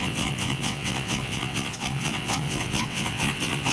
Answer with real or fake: fake